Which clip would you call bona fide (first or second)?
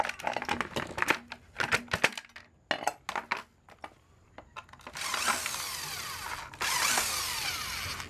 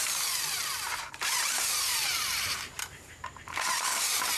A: first